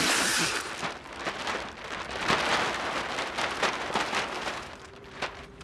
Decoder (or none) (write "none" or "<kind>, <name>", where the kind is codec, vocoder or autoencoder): none